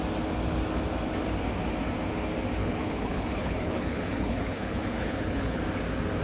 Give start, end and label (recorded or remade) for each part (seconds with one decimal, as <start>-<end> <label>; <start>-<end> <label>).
0.0-2.6 recorded; 2.6-5.6 remade; 5.6-6.2 recorded